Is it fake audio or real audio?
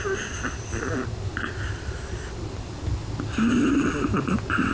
real